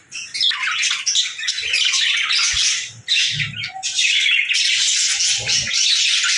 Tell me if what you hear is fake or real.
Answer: real